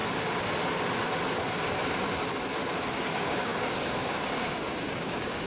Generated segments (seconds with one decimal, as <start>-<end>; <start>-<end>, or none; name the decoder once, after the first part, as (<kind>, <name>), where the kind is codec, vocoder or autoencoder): 2.9-5.5 (codec, DAC)